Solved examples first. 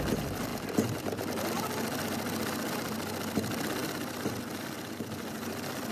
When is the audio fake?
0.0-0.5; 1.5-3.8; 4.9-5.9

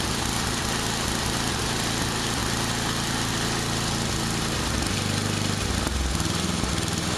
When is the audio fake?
none

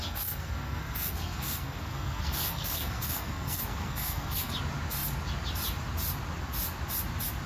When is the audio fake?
0.0-4.5

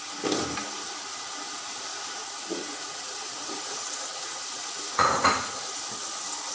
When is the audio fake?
1.9-5.8

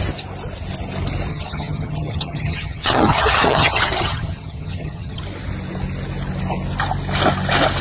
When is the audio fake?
1.3-5.2

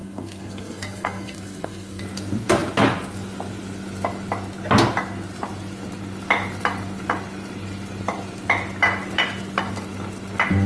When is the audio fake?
0.0-2.0